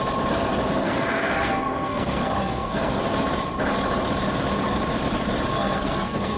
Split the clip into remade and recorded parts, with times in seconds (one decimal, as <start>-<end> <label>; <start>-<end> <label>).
0.0-0.8 recorded; 0.8-3.0 remade; 3.0-5.5 recorded; 5.5-6.4 remade